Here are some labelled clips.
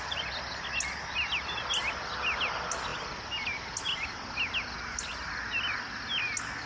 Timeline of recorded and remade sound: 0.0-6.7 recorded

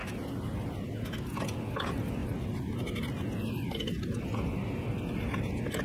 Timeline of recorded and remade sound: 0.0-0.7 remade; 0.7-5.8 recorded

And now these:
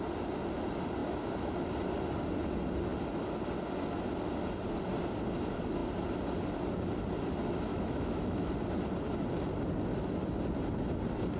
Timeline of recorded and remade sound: 0.0-7.7 recorded; 7.7-8.5 remade; 8.5-11.4 recorded

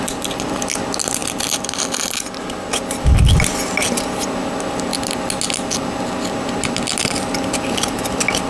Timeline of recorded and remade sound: 0.0-8.5 recorded

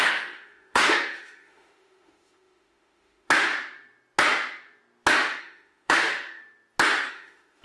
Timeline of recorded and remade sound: 0.0-3.5 remade; 3.5-5.4 recorded; 5.4-6.4 remade; 6.4-7.1 recorded; 7.1-7.6 remade

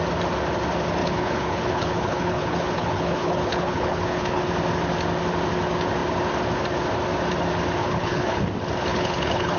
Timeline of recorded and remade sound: 0.0-1.0 recorded; 1.0-4.4 remade; 4.4-7.8 recorded; 7.8-8.4 remade; 8.4-8.9 recorded; 8.9-9.6 remade